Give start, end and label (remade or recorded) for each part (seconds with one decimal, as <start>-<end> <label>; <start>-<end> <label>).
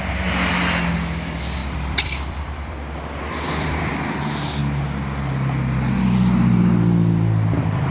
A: 0.0-1.6 recorded; 1.6-4.1 remade; 4.1-7.9 recorded